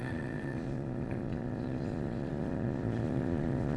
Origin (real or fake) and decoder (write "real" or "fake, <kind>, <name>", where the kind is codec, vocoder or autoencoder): fake, vocoder, Vocos